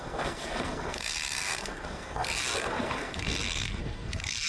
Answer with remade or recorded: remade